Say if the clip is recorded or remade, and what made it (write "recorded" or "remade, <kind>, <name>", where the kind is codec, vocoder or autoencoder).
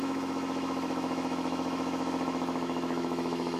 remade, autoencoder, DAC-VAE